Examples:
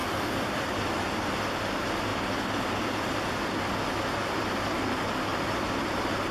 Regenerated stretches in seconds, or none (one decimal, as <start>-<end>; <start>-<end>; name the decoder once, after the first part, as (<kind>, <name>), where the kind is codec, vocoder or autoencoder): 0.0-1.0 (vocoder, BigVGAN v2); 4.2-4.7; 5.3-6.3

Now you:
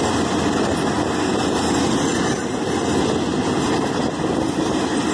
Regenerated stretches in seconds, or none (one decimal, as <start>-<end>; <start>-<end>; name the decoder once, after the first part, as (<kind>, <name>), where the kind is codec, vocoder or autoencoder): 2.1-2.8 (vocoder, BigVGAN v2); 3.3-3.9

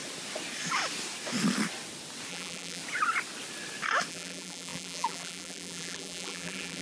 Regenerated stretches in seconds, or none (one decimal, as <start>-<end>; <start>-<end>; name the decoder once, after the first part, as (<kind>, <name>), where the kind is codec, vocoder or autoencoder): 2.3-2.8 (vocoder, BigVGAN v2); 4.1-6.8

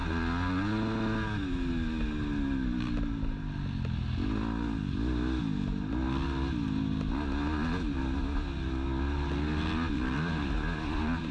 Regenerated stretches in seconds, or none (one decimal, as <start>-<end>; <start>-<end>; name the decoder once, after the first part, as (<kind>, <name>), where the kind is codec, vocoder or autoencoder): none

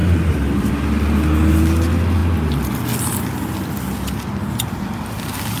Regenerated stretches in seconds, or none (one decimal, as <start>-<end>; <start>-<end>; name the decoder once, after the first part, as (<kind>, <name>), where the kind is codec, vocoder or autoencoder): 0.0-0.7 (vocoder, BigVGAN v2)

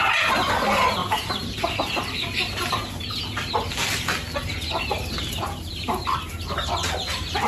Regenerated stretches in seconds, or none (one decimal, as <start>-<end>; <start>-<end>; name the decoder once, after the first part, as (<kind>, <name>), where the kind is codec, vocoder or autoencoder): 1.0-3.1 (vocoder, BigVGAN v2); 4.4-5.0; 5.4-6.2

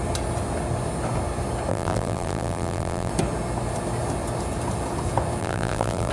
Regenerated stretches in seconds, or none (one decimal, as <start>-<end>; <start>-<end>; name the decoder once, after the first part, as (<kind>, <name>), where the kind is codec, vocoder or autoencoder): 1.7-3.1 (vocoder, BigVGAN v2); 5.4-6.1